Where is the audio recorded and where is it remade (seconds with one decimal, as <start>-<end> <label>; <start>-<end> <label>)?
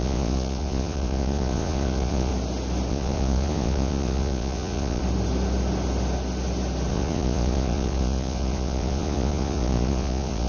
0.0-2.3 remade; 2.3-2.9 recorded; 2.9-5.0 remade; 5.0-6.9 recorded; 6.9-10.5 remade